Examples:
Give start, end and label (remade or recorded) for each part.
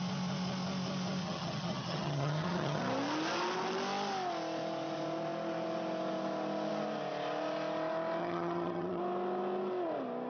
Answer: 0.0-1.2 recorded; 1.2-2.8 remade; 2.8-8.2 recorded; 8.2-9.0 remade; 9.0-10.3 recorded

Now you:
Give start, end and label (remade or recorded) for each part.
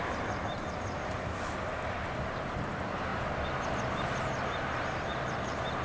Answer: 0.0-5.8 recorded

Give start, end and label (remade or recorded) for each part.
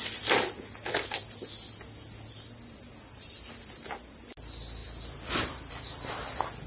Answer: 0.0-6.7 recorded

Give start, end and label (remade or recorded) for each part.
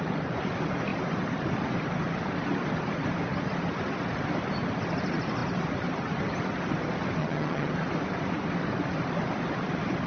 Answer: 0.0-7.2 recorded; 7.2-7.7 remade; 7.7-10.1 recorded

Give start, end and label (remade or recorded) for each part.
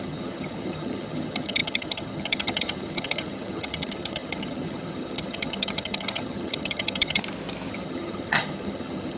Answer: 0.0-7.2 remade; 7.2-7.7 recorded; 7.7-9.2 remade